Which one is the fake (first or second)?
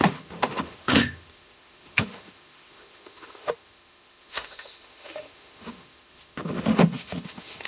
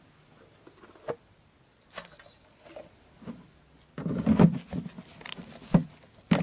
first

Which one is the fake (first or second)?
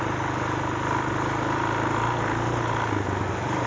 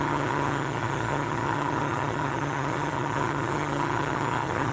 second